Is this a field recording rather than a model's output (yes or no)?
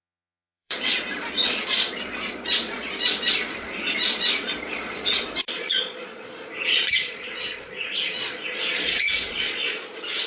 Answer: no